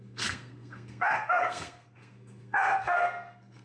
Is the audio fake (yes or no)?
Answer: yes